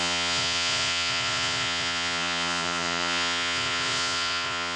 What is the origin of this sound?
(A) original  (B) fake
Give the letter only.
B